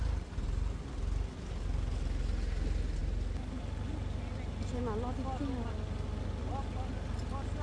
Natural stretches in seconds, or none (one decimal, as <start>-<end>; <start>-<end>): 0.0-7.6